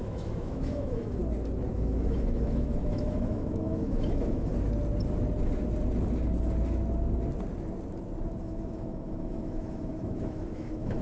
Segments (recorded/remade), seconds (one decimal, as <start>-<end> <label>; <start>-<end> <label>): 0.0-1.2 remade; 1.2-1.7 recorded; 1.7-4.5 remade; 4.5-8.4 recorded; 8.4-11.0 remade